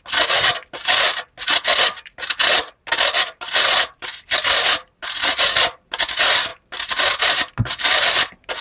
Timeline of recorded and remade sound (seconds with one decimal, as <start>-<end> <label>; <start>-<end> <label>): 0.0-4.0 recorded; 4.0-4.6 remade; 4.6-8.6 recorded